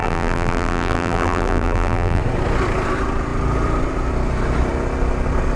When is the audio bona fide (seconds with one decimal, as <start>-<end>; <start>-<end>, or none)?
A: 2.2-5.6